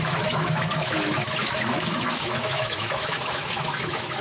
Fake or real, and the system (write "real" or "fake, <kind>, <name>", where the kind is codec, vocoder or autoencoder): fake, autoencoder, DAC-VAE